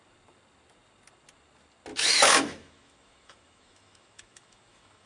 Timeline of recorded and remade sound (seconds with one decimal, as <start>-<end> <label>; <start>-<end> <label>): 0.0-1.9 recorded; 1.9-5.1 remade